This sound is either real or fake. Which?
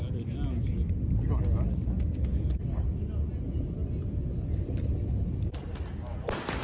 real